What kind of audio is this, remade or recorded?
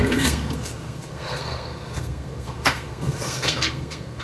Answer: remade